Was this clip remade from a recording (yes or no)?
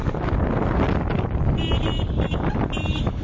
no